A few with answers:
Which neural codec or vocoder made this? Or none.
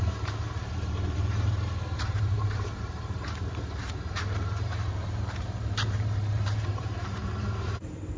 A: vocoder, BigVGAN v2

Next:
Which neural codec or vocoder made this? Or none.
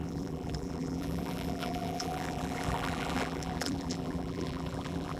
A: vocoder, BigVGAN v2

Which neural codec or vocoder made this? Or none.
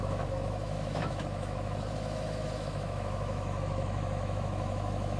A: autoencoder, DAC-VAE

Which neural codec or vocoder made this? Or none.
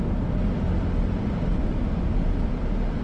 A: none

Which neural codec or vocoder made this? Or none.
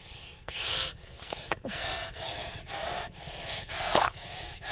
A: codec, SNAC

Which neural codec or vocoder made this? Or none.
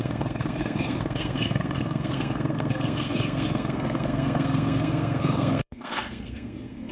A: codec, SNAC